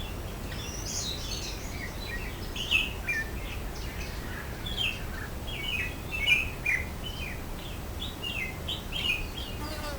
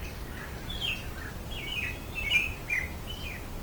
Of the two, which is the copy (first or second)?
second